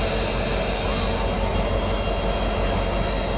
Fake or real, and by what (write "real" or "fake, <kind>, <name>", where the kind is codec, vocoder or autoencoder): real